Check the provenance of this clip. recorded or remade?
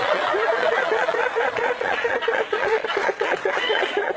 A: remade